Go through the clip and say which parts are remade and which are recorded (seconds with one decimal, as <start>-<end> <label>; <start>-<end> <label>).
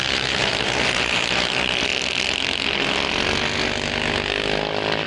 0.0-1.9 remade; 1.9-5.1 recorded